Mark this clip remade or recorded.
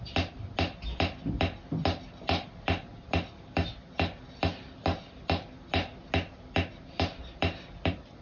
recorded